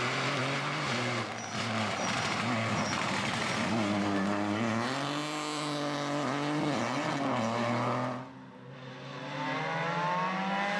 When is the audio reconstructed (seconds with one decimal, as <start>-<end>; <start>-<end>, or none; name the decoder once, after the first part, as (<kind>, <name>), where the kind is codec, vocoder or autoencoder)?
none